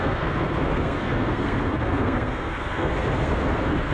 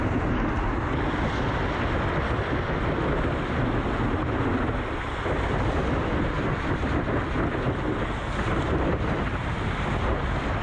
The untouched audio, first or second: second